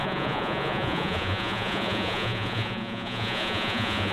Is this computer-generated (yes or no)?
yes